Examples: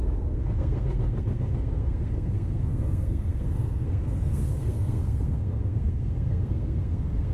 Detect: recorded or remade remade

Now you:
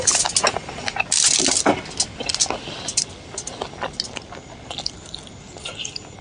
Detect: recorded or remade recorded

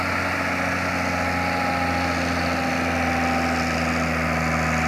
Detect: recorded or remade recorded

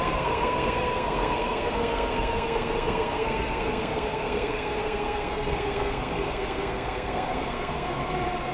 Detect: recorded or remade remade